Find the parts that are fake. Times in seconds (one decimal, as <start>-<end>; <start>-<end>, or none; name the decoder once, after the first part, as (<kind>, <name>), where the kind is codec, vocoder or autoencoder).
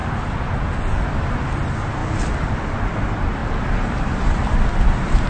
none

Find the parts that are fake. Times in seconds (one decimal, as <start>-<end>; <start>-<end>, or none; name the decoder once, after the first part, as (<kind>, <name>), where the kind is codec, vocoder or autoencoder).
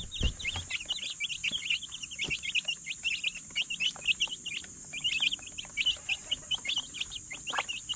none